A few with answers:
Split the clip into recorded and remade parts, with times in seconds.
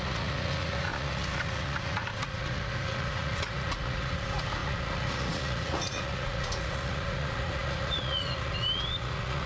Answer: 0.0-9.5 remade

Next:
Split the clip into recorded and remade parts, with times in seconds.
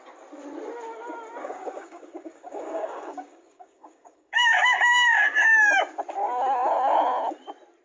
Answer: 0.0-1.4 recorded; 1.4-5.5 remade; 5.5-7.8 recorded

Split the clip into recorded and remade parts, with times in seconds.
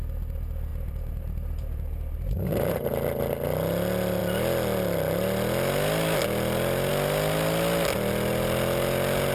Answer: 0.0-0.7 recorded; 0.7-2.9 remade; 2.9-9.3 recorded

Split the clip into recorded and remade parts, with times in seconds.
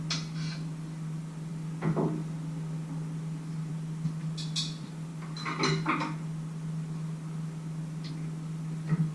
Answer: 0.0-9.1 recorded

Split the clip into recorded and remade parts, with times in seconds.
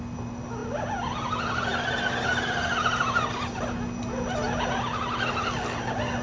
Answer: 0.0-6.2 recorded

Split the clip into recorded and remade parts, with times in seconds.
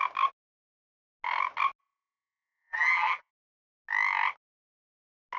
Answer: 0.0-1.8 recorded; 1.8-3.3 remade; 3.3-5.4 recorded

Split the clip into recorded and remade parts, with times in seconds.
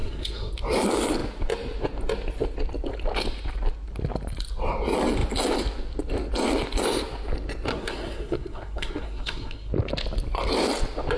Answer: 0.0-0.5 remade; 0.5-7.7 recorded; 7.7-9.7 remade; 9.7-11.2 recorded